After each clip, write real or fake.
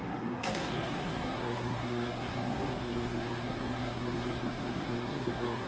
fake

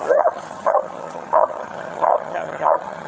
fake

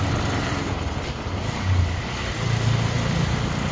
real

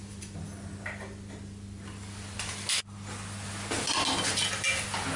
real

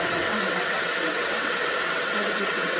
fake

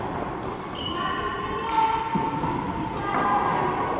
real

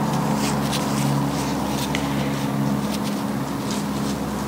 real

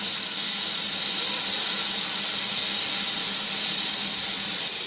real